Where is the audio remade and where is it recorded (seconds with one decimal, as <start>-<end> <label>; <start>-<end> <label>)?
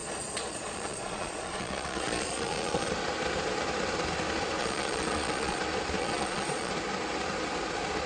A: 0.0-2.9 remade; 2.9-4.6 recorded; 4.6-5.6 remade; 5.6-6.0 recorded; 6.0-6.7 remade; 6.7-8.1 recorded